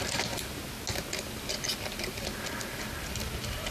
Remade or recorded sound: recorded